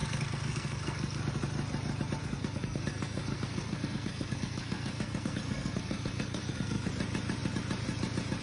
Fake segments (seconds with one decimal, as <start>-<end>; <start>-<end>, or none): 0.0-1.2; 2.2-6.9

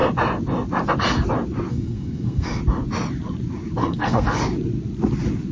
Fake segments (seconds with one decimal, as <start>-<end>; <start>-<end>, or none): 1.7-2.6; 3.8-4.4

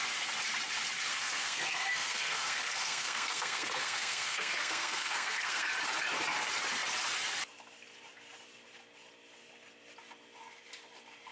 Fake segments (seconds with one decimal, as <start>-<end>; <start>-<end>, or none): 1.1-5.7

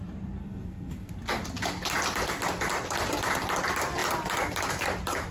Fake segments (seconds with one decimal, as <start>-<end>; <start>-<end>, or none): 0.4-1.1

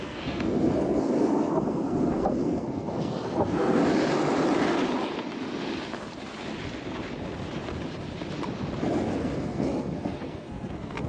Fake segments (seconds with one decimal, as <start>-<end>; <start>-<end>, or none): 0.0-3.8; 8.8-11.1

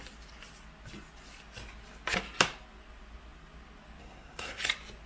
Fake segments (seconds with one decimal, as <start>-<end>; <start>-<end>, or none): 4.0-4.6